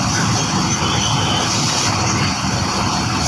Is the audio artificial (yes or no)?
no